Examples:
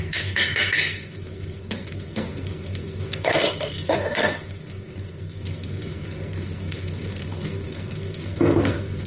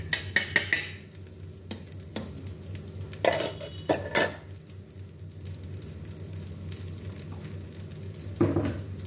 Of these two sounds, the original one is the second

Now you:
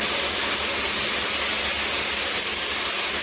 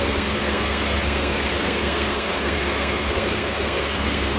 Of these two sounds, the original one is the first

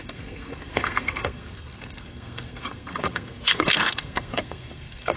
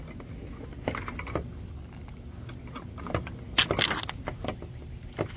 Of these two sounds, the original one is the second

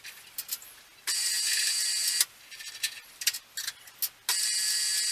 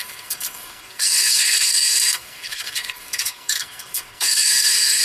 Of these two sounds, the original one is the first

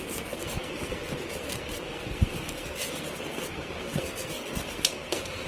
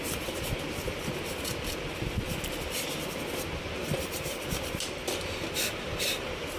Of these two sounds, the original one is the second